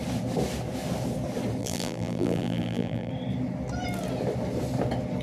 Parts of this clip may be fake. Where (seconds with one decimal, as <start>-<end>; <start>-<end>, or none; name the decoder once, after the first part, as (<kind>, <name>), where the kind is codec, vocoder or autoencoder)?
1.6-3.1 (vocoder, BigVGAN v2)